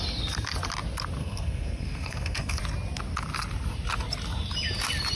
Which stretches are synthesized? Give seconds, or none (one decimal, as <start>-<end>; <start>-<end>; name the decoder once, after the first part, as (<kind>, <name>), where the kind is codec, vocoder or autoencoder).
1.2-2.6 (codec, SNAC)